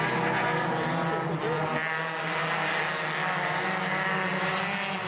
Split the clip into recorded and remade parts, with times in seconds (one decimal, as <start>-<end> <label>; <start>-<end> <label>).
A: 0.0-5.1 recorded